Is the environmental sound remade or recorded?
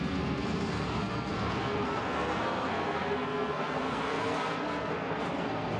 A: remade